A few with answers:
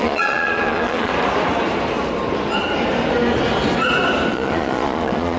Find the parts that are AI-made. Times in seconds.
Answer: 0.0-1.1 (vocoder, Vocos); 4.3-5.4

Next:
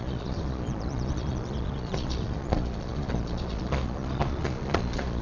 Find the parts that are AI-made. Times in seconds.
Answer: 0.0-5.2 (vocoder, Vocos)

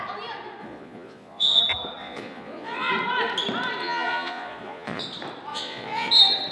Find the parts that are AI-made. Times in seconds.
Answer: 0.6-1.6 (vocoder, Vocos); 2.0-2.9; 3.8-5.0; 5.5-6.1

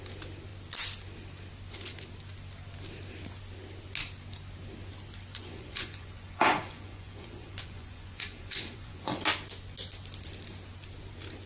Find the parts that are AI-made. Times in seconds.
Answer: 5.3-9.2 (vocoder, Vocos)

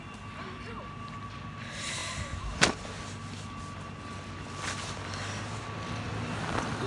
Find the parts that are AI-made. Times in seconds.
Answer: none

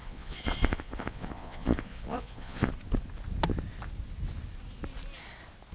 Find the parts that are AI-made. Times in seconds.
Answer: 0.0-2.7 (vocoder, Vocos)